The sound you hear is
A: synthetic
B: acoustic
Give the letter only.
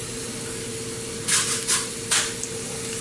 B